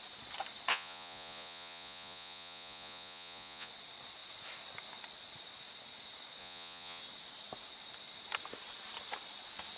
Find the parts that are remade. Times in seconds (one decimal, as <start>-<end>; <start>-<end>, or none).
0.7-3.7; 6.4-7.0